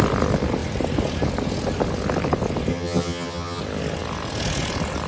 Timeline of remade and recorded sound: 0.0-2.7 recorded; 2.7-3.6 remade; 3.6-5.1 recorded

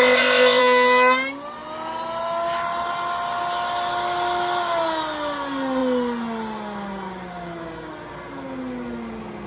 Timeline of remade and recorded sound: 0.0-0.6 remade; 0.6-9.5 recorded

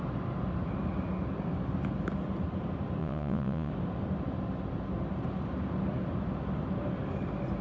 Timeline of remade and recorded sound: 0.0-3.0 recorded; 3.0-3.7 remade; 3.7-7.6 recorded

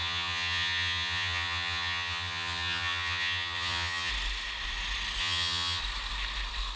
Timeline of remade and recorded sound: 0.0-4.1 remade; 4.1-5.2 recorded; 5.2-5.8 remade; 5.8-6.8 recorded

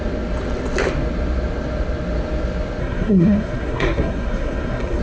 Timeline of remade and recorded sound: 0.0-2.8 recorded; 2.8-5.0 remade

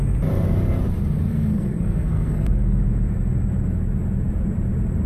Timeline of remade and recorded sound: 0.0-1.3 recorded; 1.3-2.8 remade; 2.8-5.1 recorded

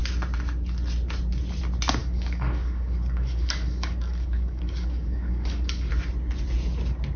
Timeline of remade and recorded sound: 0.0-2.0 recorded; 2.0-5.9 remade; 5.9-7.2 recorded

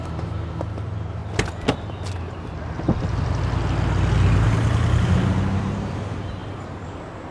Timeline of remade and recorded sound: 0.0-1.2 remade; 1.2-5.6 recorded; 5.6-6.4 remade; 6.4-7.3 recorded